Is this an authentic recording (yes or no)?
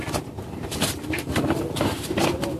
yes